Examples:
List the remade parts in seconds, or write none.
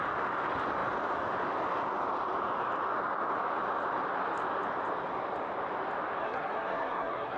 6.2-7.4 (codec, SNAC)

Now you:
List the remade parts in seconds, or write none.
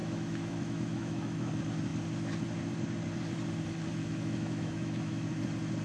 0.0-1.5 (autoencoder, DAC-VAE); 3.9-5.3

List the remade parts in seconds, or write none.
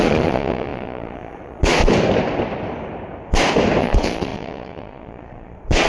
0.0-1.8 (vocoder, Vocos); 3.8-5.9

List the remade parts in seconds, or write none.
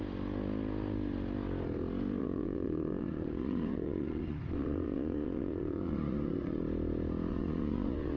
2.2-6.6 (vocoder, Vocos); 7.3-8.2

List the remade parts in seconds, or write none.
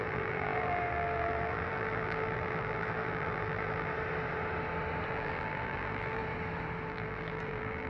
0.0-3.9 (vocoder, BigVGAN v2); 5.1-6.2; 6.9-7.9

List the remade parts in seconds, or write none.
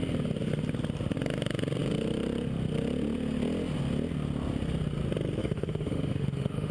5.4-6.7 (autoencoder, DAC-VAE)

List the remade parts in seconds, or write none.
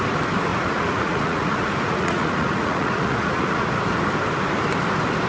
0.5-3.7 (vocoder, Vocos)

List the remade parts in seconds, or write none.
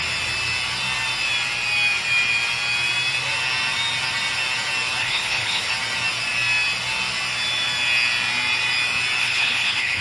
5.0-5.7 (codec, HILCodec); 9.2-10.0